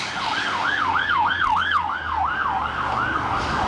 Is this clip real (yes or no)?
no